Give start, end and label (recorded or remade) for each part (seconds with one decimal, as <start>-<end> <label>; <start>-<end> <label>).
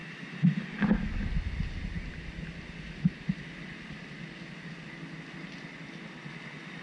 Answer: 0.0-6.8 recorded